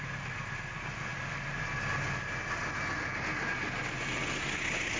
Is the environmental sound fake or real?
real